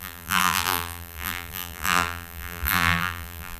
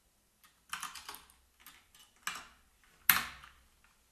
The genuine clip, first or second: second